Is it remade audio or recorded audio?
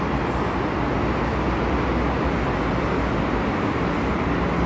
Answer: recorded